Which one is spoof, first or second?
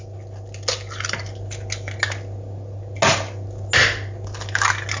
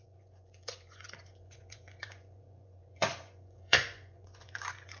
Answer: second